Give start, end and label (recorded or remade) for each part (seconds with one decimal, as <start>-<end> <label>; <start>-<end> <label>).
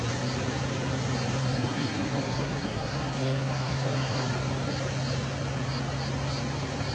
0.0-1.4 recorded; 1.4-4.3 remade; 4.3-6.9 recorded